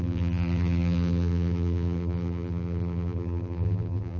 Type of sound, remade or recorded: remade